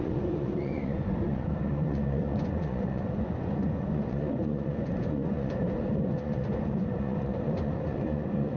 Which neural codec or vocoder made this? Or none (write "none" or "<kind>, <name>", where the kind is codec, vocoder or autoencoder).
vocoder, Vocos